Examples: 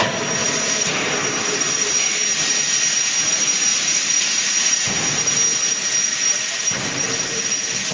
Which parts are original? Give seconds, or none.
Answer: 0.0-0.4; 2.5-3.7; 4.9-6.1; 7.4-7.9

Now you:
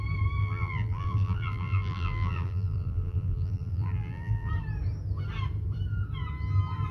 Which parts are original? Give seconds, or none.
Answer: 0.0-0.4; 4.5-6.9

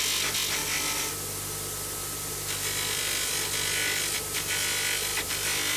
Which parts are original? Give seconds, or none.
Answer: 0.0-0.6; 1.1-2.0; 3.3-5.1

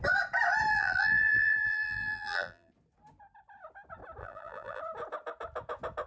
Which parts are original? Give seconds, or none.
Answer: 0.0-0.7; 2.7-4.2; 4.8-6.1

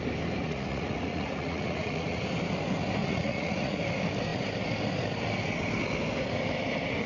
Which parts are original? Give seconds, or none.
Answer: 0.0-0.4; 2.2-3.0; 3.8-7.1

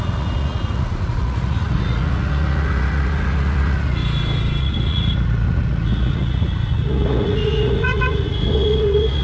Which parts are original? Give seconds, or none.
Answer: 4.0-4.6